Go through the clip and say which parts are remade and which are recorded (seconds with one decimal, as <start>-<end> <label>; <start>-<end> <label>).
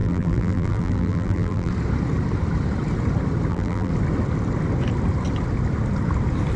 0.0-1.7 remade; 1.7-3.5 recorded; 3.5-3.9 remade; 3.9-6.6 recorded